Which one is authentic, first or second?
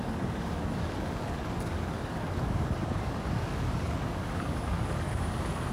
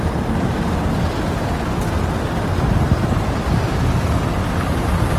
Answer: second